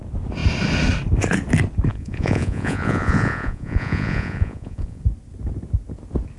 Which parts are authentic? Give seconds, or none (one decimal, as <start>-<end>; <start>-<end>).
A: 0.0-1.9; 5.0-6.4